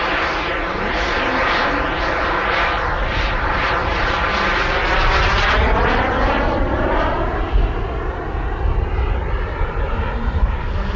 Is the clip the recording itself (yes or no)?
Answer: yes